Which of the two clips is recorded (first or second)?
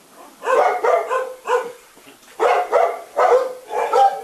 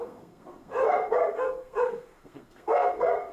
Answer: first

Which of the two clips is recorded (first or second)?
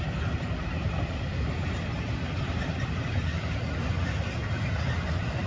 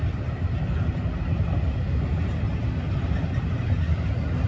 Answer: second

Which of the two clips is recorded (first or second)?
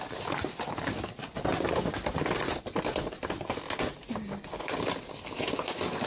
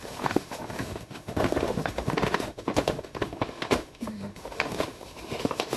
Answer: first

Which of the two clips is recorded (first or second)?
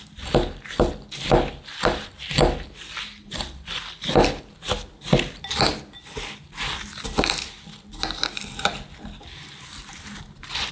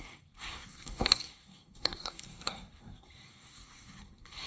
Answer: first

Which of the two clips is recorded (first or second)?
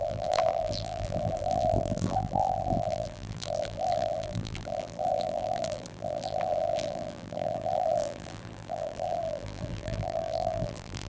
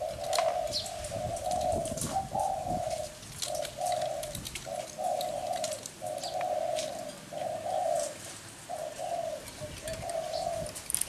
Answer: second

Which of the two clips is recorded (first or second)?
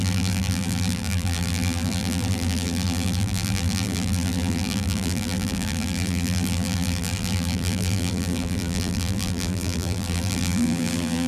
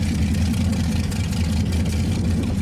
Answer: second